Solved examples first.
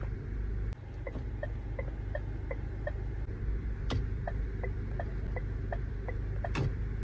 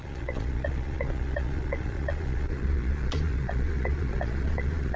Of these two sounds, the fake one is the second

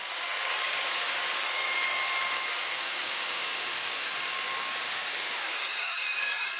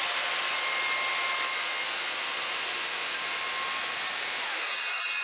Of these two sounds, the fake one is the first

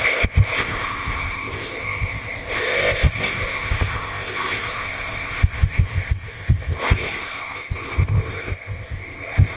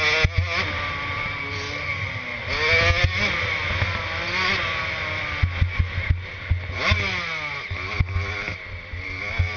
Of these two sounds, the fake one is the first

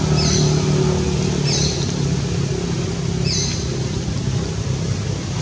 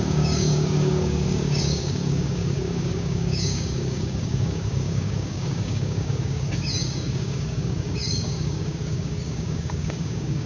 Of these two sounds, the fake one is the second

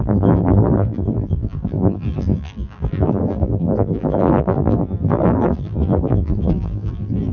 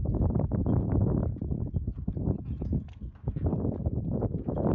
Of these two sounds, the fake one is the first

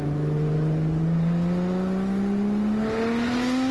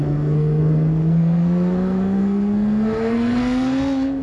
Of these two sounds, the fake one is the second